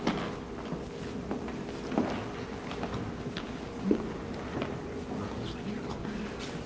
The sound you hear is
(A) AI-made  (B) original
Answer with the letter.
B